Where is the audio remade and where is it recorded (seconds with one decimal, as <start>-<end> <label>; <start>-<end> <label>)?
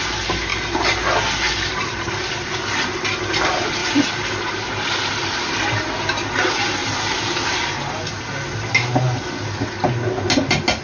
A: 0.0-3.8 recorded; 3.8-5.5 remade; 5.5-6.8 recorded; 6.8-7.7 remade; 7.7-10.8 recorded